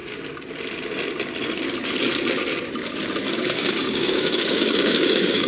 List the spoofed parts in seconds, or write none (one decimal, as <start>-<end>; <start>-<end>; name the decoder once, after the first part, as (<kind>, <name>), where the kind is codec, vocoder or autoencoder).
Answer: 3.3-5.5 (codec, DAC)